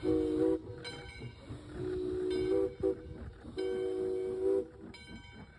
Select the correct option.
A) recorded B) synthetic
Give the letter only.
A